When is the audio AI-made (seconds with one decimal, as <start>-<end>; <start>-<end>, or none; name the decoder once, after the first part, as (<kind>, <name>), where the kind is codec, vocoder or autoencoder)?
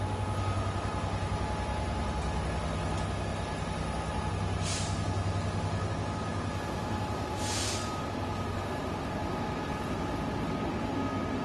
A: none